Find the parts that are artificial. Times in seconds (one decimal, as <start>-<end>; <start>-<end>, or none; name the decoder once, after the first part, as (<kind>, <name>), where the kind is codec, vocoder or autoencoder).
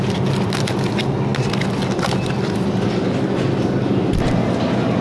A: none